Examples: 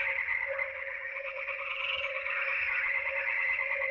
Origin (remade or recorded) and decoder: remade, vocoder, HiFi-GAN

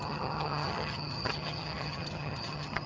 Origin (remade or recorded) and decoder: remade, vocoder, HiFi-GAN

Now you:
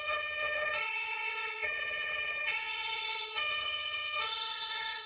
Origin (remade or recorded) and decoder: remade, vocoder, HiFi-GAN